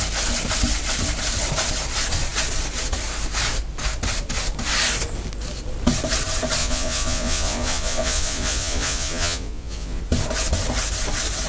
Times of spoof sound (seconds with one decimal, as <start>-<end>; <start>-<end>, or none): 6.6-10.0